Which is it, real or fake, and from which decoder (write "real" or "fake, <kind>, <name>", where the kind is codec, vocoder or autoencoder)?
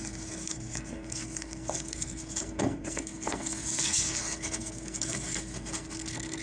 fake, codec, SNAC